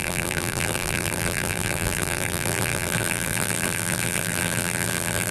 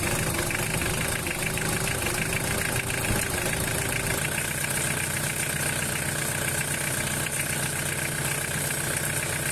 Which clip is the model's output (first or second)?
first